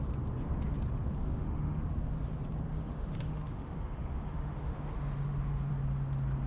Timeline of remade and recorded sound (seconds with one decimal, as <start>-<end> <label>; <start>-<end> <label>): 0.0-1.2 recorded; 1.2-1.8 remade; 1.8-2.7 recorded; 2.7-5.7 remade; 5.7-6.5 recorded